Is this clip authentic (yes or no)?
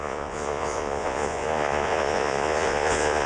no